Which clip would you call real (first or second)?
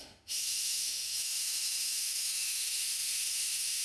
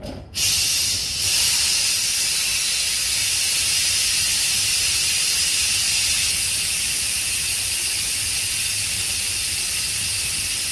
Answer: second